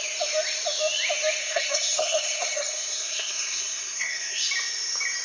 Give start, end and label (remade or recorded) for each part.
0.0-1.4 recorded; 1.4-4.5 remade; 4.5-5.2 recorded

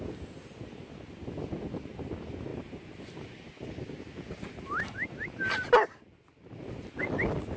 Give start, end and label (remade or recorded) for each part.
0.0-2.5 recorded; 2.5-7.0 remade; 7.0-7.6 recorded

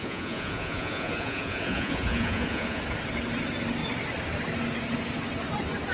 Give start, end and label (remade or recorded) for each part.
0.0-2.8 remade; 2.8-5.9 recorded

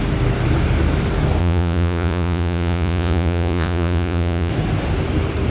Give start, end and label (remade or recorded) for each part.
0.0-1.4 recorded; 1.4-4.5 remade; 4.5-5.5 recorded

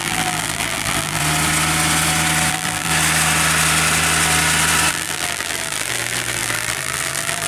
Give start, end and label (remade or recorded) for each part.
0.0-1.2 remade; 1.2-2.5 recorded; 2.5-2.9 remade; 2.9-4.9 recorded; 4.9-7.5 remade

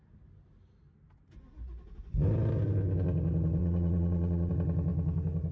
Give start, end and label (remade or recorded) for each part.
0.0-3.6 recorded; 3.6-4.5 remade; 4.5-5.5 recorded